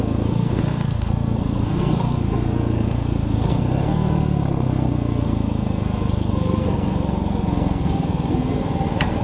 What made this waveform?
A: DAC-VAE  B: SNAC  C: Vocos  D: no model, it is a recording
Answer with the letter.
B